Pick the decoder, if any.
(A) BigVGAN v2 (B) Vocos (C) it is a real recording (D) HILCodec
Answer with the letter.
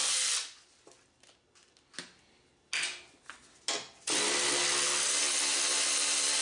C